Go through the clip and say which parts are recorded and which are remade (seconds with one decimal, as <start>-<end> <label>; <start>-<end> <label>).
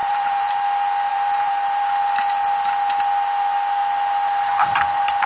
0.0-0.5 remade; 0.5-1.1 recorded; 1.1-1.8 remade; 1.8-5.3 recorded